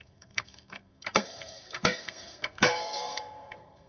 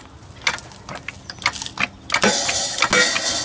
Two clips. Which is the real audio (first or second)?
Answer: second